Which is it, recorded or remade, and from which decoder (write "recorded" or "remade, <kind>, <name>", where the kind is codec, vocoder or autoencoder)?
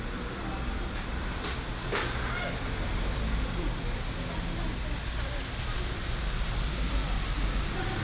recorded